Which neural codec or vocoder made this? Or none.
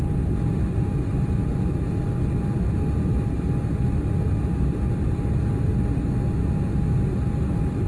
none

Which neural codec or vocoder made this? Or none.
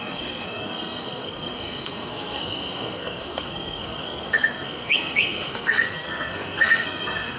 codec, SNAC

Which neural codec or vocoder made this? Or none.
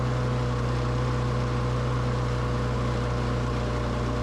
none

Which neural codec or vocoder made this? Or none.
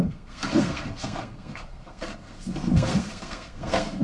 codec, SNAC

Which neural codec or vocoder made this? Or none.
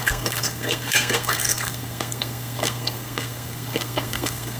codec, SNAC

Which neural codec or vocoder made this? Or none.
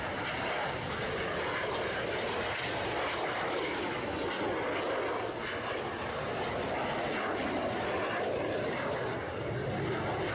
none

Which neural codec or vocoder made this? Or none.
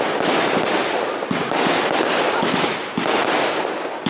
none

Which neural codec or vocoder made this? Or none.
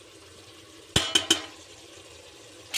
none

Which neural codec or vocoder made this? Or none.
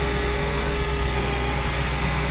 codec, SNAC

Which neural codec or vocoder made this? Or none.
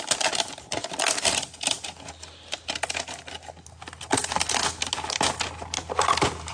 none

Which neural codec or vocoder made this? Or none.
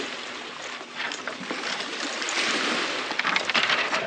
none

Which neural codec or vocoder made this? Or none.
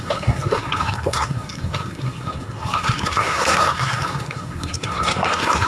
codec, SNAC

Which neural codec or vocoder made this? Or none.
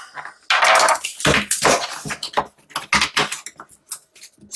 none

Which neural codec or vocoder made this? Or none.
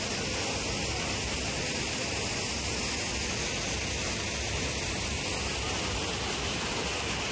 none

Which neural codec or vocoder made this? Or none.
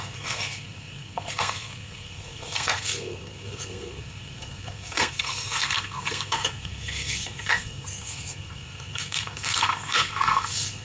codec, SNAC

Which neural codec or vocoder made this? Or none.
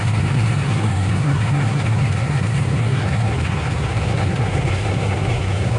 codec, SNAC